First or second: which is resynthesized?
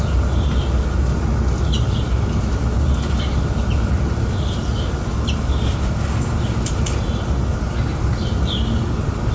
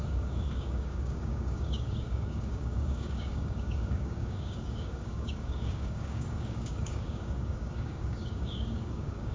second